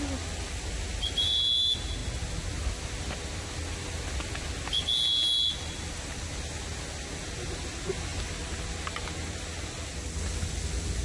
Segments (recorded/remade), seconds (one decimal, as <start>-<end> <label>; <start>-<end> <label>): 0.0-11.0 recorded